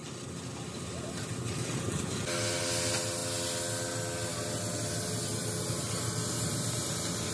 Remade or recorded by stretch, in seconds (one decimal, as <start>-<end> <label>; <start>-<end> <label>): 0.0-7.3 recorded